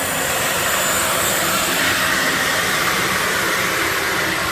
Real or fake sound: real